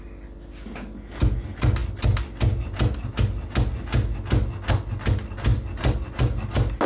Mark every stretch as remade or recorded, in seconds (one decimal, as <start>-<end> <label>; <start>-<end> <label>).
0.0-6.9 recorded